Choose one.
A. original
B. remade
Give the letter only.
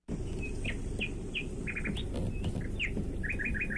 A